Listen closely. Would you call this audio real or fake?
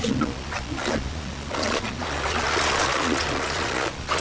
fake